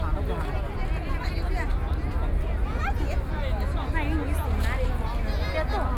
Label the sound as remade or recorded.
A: recorded